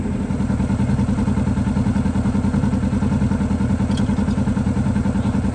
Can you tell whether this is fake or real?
real